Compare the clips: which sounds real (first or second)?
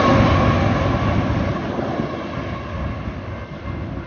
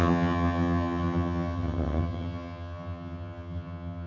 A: first